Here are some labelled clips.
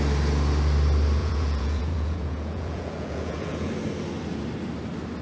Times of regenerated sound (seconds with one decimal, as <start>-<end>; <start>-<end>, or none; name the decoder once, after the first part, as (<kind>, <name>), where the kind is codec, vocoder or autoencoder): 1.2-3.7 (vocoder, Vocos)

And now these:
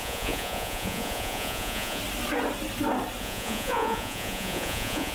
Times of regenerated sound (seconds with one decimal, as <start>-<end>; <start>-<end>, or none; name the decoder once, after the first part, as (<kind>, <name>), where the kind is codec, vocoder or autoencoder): 0.0-2.0 (vocoder, Vocos); 3.2-5.1

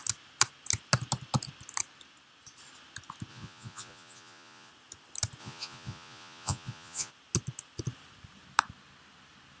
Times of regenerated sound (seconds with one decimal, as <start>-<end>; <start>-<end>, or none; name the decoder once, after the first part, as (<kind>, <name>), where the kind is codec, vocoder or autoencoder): 3.3-4.7 (vocoder, Vocos); 5.4-7.1

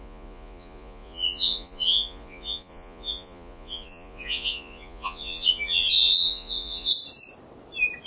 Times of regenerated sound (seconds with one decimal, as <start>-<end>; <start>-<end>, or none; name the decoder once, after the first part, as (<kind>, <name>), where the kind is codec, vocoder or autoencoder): 0.0-6.9 (vocoder, Vocos)